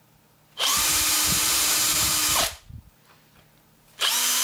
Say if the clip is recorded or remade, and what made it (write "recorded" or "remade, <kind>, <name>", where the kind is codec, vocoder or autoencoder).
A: remade, vocoder, BigVGAN v2